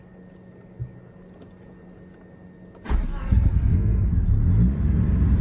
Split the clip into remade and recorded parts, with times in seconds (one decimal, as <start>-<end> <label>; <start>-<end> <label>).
0.0-3.2 recorded; 3.2-4.1 remade; 4.1-5.4 recorded

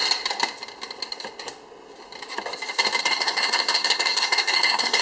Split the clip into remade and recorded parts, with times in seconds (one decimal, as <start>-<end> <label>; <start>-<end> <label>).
0.0-3.0 recorded; 3.0-5.0 remade

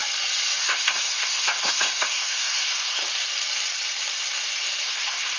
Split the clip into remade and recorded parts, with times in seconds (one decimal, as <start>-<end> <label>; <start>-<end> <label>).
0.0-0.6 recorded; 0.6-3.0 remade; 3.0-4.8 recorded; 4.8-5.4 remade